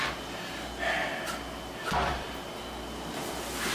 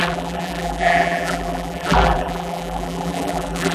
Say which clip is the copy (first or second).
second